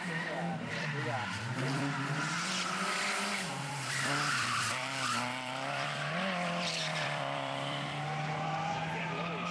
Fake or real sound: fake